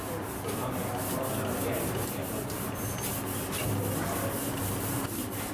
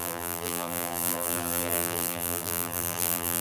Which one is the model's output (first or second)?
second